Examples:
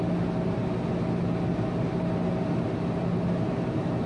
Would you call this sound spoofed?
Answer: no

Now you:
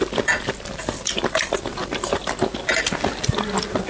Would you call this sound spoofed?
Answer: no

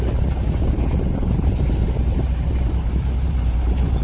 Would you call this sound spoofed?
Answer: yes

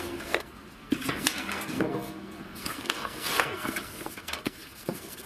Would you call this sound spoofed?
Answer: yes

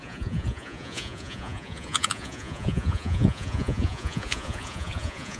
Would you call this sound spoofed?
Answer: yes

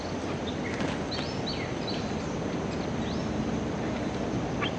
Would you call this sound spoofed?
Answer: no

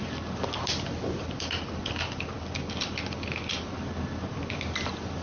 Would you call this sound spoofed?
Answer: no